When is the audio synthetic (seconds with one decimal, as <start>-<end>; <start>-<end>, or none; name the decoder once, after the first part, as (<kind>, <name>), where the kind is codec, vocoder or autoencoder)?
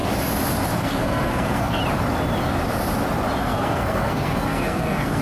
0.8-1.8 (codec, SNAC); 3.4-5.2